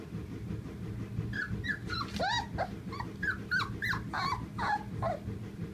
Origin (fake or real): real